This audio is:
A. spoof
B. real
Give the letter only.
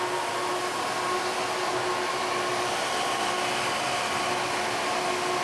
B